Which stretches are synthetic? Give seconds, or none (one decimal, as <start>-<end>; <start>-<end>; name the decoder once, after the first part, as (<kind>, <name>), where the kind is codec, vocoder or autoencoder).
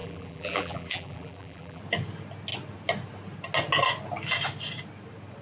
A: 0.0-1.8 (vocoder, BigVGAN v2)